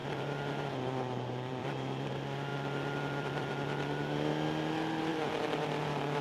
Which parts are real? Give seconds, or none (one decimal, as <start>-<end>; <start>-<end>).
2.1-2.5; 3.5-5.1